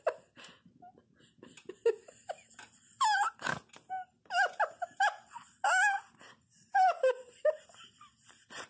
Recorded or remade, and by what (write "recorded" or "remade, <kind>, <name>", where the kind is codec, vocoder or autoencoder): recorded